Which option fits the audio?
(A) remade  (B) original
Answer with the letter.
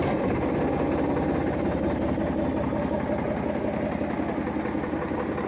B